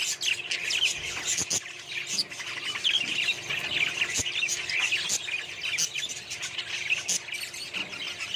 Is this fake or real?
real